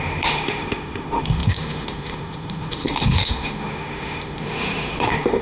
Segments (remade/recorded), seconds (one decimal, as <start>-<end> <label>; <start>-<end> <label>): 0.0-5.4 remade